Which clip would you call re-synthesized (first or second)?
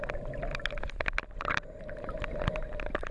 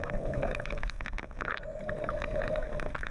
second